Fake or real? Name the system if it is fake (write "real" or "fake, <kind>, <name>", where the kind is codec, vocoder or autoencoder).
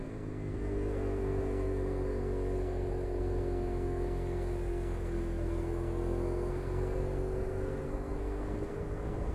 fake, codec, SNAC